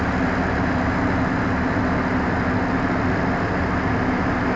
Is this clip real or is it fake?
real